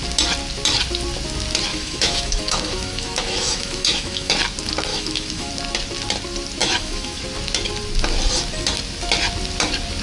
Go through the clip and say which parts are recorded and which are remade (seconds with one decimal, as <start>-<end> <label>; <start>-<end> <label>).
0.0-1.7 recorded; 1.7-4.3 remade; 4.3-4.9 recorded; 4.9-5.5 remade; 5.5-6.6 recorded; 6.6-7.2 remade; 7.2-10.0 recorded